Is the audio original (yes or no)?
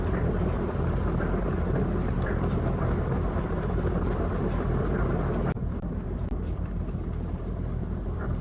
no